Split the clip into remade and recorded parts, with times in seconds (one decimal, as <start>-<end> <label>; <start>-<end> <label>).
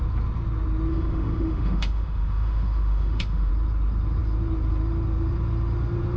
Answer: 0.0-0.9 recorded; 0.9-3.5 remade; 3.5-6.2 recorded